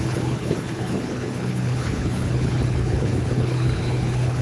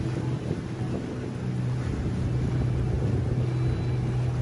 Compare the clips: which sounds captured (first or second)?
second